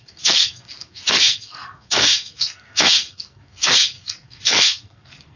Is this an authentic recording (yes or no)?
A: no